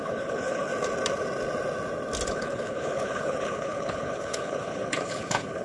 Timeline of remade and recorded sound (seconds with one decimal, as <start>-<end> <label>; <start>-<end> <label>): 0.0-0.7 remade; 0.7-2.3 recorded; 2.3-5.6 remade

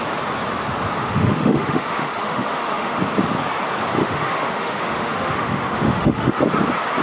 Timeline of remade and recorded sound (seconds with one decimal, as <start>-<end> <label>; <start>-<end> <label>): 0.0-1.0 recorded; 1.0-3.0 remade; 3.0-4.0 recorded; 4.0-6.4 remade; 6.4-7.0 recorded